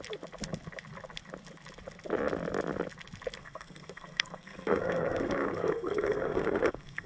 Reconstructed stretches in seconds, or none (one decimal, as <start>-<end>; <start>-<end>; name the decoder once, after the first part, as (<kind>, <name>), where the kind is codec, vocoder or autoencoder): 3.4-7.1 (codec, SNAC)